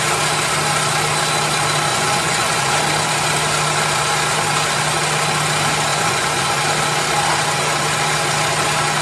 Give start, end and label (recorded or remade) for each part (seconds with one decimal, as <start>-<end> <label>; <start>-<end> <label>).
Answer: 0.0-1.9 recorded; 1.9-2.7 remade; 2.7-5.9 recorded; 5.9-6.6 remade; 6.6-9.0 recorded